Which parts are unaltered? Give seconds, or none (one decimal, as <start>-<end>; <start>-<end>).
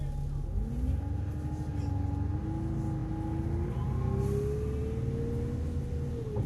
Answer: 0.0-6.5